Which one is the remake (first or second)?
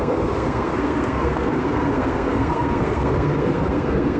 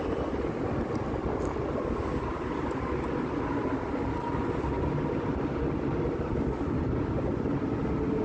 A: first